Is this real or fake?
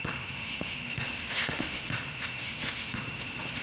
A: fake